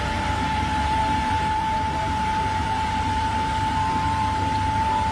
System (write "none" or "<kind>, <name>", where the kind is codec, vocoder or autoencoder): vocoder, BigVGAN v2